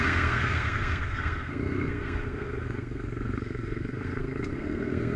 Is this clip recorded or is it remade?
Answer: remade